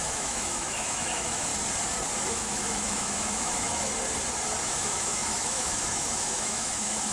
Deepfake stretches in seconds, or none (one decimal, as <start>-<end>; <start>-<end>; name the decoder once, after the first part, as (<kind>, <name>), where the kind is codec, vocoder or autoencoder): 0.0-1.5 (autoencoder, DAC-VAE); 2.3-3.9; 4.6-7.1